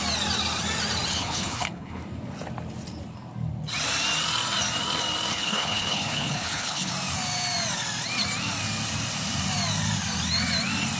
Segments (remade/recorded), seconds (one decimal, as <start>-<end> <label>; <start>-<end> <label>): 0.0-1.1 recorded; 1.1-2.0 remade; 2.0-5.3 recorded; 5.3-6.9 remade; 6.9-11.0 recorded